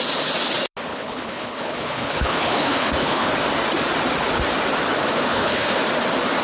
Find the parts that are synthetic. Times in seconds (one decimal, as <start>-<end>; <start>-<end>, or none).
0.9-3.3; 5.3-5.8

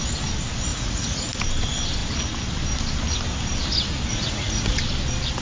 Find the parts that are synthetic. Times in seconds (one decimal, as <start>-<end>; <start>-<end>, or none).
0.7-1.3; 4.1-4.8

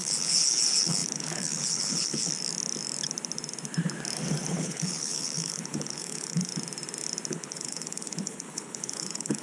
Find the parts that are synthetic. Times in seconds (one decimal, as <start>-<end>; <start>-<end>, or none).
0.0-2.3; 4.5-6.5; 7.3-9.4

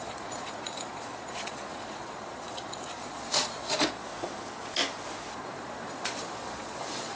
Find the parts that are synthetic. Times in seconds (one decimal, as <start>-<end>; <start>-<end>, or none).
0.0-4.1; 5.3-7.2

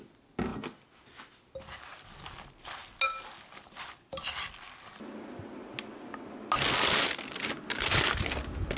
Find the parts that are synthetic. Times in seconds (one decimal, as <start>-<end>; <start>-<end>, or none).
none

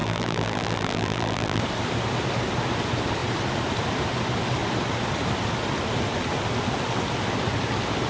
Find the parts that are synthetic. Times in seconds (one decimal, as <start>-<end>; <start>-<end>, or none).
0.0-1.6

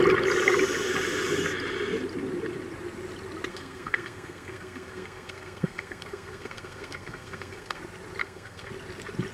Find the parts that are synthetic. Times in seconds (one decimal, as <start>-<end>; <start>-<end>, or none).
3.5-7.8; 8.2-8.7

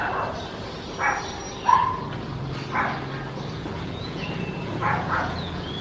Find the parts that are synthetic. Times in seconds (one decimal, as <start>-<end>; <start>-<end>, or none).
3.5-5.8